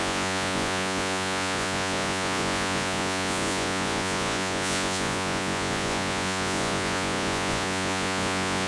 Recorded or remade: remade